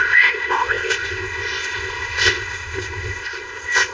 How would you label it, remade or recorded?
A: remade